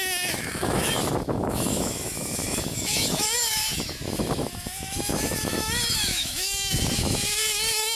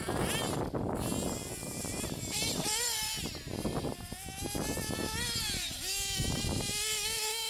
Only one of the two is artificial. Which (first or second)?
first